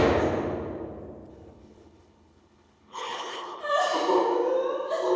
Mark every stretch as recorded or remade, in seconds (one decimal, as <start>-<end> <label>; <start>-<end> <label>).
0.0-1.3 recorded; 1.3-3.6 remade; 3.6-5.2 recorded